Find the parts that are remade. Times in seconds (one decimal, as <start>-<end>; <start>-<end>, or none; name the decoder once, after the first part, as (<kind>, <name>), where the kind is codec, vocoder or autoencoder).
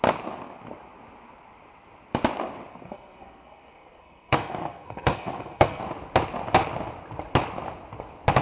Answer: 2.7-5.8 (codec, SNAC)